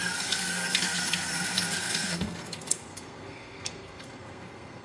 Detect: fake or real fake